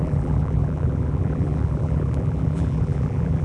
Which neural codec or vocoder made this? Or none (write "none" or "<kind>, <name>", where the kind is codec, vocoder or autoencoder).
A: vocoder, BigVGAN v2